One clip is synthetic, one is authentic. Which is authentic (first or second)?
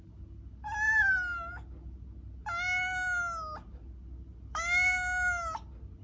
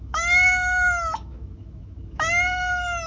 first